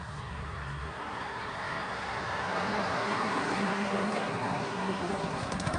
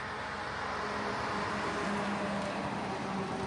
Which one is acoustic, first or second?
second